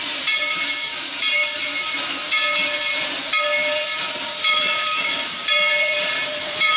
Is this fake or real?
fake